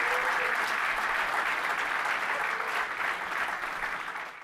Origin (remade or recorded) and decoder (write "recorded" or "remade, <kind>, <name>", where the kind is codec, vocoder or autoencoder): recorded